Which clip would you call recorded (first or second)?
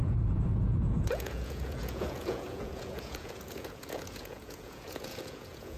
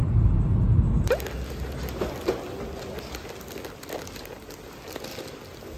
second